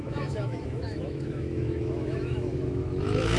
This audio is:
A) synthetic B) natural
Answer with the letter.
A